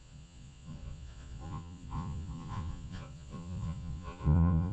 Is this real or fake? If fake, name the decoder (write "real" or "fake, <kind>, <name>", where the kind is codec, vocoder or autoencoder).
fake, vocoder, Vocos